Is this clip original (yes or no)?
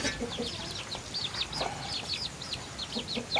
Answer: yes